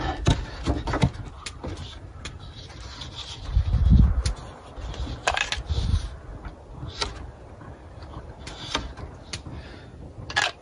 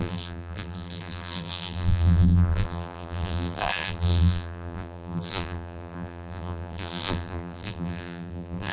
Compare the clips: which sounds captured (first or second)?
first